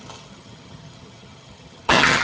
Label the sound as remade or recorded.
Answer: remade